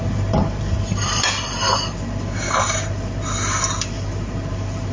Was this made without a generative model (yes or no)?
no